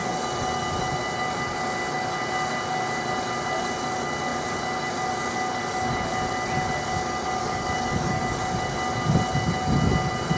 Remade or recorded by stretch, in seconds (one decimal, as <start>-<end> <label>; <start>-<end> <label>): 0.0-7.4 recorded; 7.4-8.2 remade; 8.2-10.4 recorded